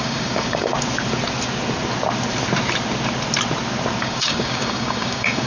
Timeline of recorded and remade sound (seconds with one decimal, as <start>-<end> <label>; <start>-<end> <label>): 0.0-0.7 remade; 0.7-4.0 recorded; 4.0-5.5 remade